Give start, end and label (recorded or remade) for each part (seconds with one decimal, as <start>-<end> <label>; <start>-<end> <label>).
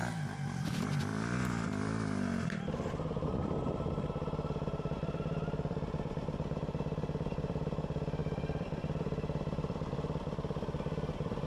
0.0-0.6 recorded; 0.6-11.5 remade